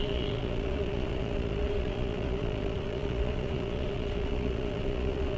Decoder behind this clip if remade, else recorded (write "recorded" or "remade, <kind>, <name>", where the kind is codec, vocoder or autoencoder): remade, vocoder, Vocos